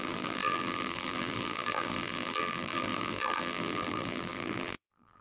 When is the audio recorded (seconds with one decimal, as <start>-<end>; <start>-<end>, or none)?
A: none